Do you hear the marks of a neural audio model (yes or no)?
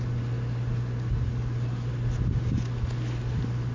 no